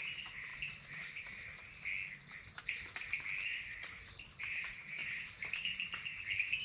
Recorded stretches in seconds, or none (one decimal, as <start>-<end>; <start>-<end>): 0.5-4.4; 5.0-6.6